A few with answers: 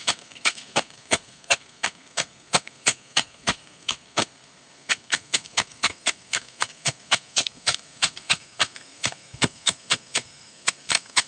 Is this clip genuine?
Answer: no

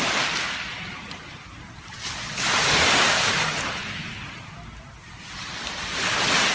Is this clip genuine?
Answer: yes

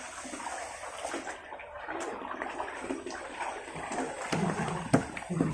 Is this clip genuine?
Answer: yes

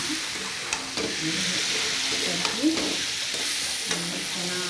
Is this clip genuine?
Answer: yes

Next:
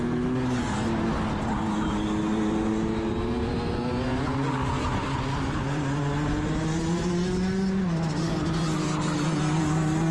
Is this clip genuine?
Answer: yes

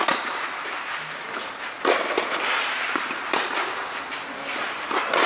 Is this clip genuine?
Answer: yes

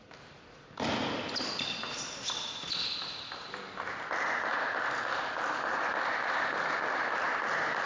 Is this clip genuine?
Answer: yes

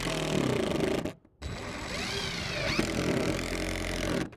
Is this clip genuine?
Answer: yes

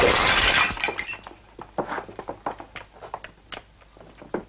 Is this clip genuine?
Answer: yes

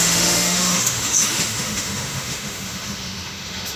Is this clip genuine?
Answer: no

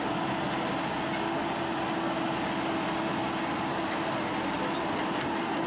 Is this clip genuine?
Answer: yes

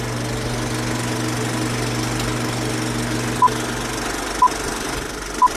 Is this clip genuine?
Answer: yes